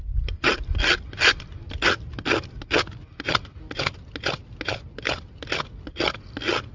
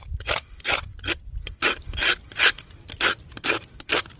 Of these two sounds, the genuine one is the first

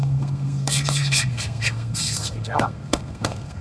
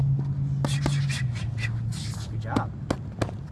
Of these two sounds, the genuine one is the second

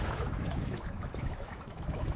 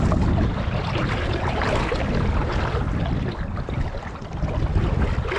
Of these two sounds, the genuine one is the second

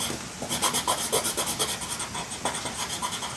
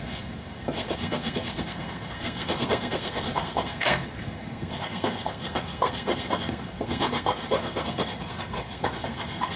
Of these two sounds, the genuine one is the first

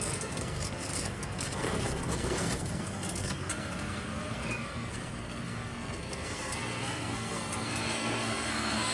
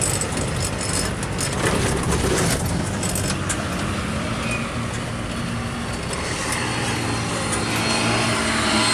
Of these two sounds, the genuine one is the second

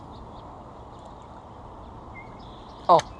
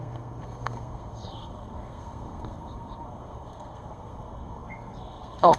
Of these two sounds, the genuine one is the first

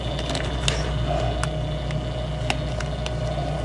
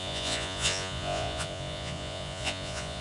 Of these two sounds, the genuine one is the first